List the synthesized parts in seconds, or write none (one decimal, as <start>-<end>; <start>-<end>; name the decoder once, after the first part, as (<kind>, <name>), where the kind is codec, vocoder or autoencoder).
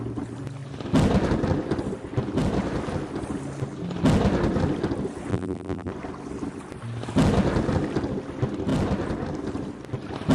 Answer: 5.3-5.9 (vocoder, BigVGAN v2)